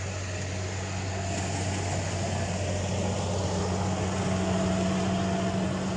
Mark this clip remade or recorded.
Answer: recorded